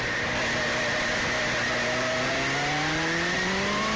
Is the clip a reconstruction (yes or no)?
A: no